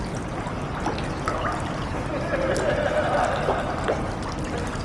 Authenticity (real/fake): real